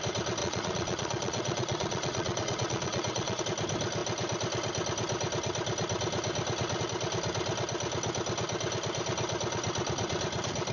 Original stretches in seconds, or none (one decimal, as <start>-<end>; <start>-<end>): 0.0-0.4; 3.4-10.7